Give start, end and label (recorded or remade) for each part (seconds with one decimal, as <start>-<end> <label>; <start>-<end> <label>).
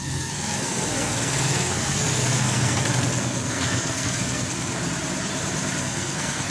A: 0.0-4.8 remade; 4.8-5.8 recorded; 5.8-6.5 remade